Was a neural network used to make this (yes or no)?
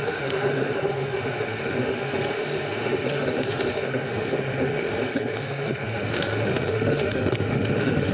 yes